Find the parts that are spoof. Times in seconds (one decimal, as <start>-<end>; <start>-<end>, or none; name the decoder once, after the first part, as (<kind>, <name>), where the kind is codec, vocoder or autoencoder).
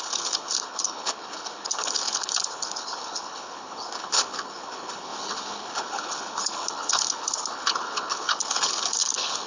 0.0-9.5 (codec, HILCodec)